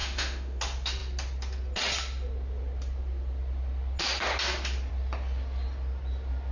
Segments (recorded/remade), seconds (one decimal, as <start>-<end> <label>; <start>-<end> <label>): 0.0-0.6 remade; 0.6-6.5 recorded